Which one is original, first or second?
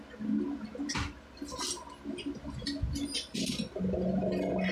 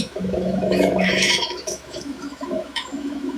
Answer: first